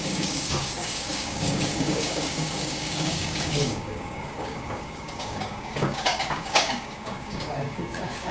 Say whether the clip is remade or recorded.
remade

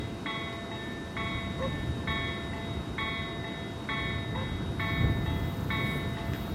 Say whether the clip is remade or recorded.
recorded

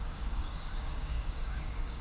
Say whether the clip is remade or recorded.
remade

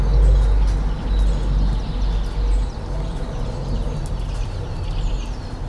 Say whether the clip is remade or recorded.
recorded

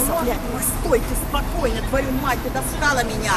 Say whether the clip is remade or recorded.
remade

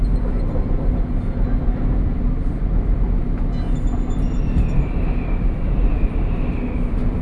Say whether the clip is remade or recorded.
recorded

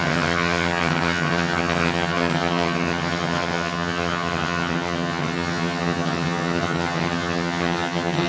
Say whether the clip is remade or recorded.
remade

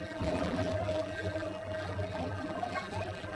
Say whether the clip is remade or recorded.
remade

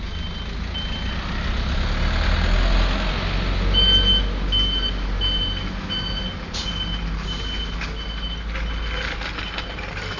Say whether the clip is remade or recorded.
recorded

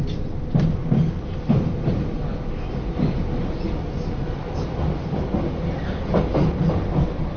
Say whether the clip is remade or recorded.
recorded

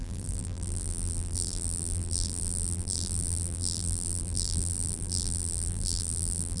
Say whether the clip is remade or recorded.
remade